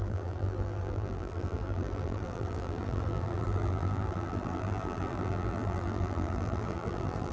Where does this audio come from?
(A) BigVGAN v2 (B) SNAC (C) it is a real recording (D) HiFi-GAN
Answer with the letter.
A